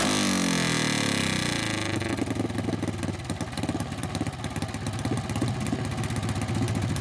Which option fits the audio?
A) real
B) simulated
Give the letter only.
A